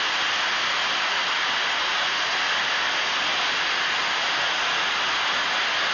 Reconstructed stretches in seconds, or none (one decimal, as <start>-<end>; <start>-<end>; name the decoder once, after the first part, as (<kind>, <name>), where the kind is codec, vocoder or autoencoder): none